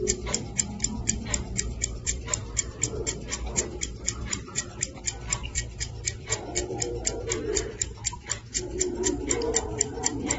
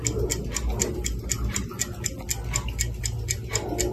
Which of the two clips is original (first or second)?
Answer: second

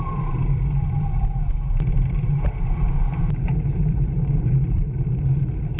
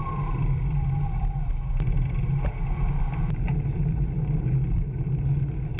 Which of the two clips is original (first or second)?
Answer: second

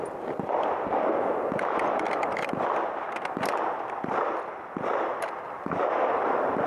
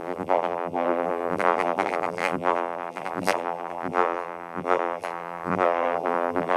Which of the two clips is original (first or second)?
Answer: first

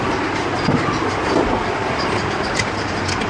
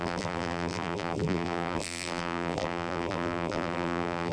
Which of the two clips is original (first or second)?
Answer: first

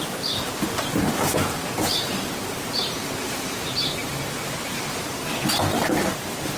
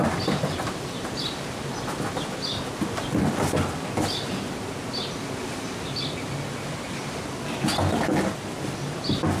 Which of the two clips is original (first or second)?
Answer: second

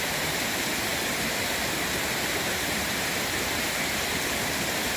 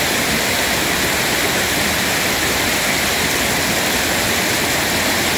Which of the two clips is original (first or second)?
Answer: second